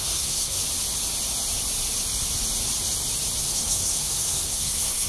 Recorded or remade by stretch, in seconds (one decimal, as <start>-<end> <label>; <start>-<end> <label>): 0.0-0.6 remade; 0.6-3.4 recorded; 3.4-5.1 remade